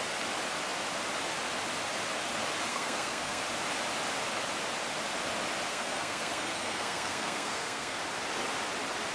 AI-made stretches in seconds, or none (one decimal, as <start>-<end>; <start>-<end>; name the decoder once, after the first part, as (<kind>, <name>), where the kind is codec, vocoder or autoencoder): 2.7-3.4 (codec, SNAC); 5.7-8.0